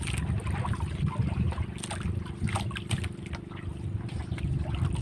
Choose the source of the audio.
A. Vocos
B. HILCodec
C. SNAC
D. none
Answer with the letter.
D